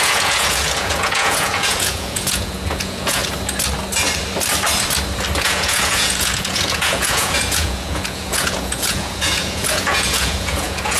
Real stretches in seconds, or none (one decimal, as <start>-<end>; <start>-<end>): 3.2-5.4